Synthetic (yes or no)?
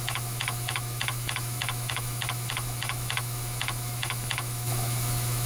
yes